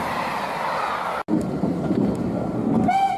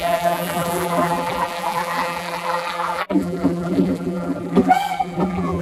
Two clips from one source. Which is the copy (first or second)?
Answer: second